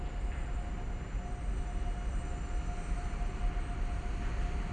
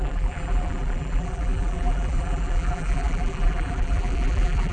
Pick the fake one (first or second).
second